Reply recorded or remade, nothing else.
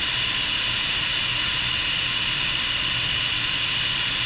recorded